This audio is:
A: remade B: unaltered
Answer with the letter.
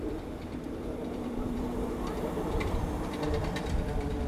A